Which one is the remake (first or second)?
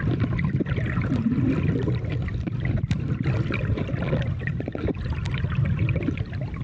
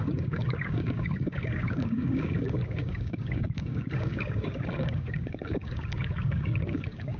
second